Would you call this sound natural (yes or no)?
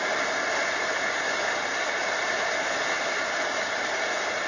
yes